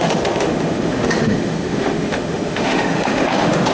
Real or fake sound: fake